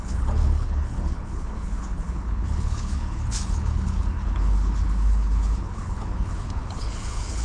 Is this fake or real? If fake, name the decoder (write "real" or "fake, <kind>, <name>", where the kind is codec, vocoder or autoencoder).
fake, codec, HILCodec